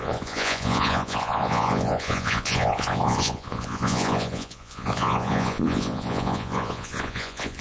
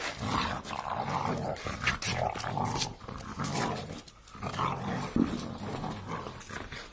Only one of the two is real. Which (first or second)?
second